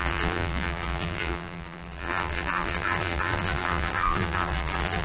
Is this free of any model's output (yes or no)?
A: no